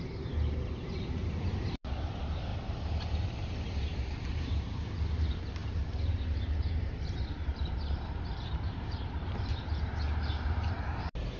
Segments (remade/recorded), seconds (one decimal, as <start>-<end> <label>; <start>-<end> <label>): 0.0-2.5 remade; 2.5-3.1 recorded; 3.1-11.4 remade